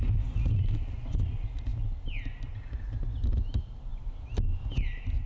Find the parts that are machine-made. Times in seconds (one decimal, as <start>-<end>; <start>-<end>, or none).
none

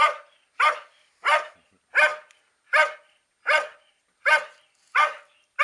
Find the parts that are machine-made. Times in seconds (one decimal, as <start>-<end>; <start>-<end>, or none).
none